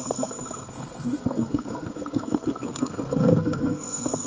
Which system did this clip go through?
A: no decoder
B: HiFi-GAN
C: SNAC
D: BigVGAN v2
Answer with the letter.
C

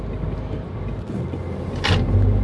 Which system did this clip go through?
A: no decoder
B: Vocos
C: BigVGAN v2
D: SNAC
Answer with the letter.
A